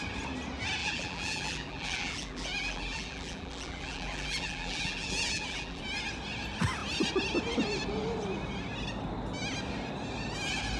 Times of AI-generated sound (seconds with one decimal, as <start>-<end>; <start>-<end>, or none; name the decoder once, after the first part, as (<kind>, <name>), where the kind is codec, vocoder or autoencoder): 0.8-5.8 (vocoder, BigVGAN v2)